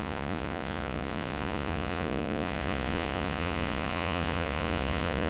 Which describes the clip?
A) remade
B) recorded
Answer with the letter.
A